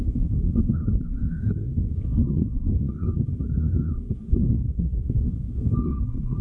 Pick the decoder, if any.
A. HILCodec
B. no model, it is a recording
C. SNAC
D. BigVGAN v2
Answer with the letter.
C